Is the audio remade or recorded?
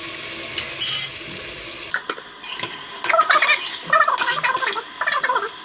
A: recorded